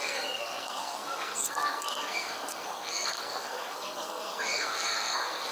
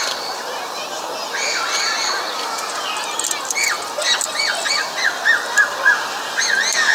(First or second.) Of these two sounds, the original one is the second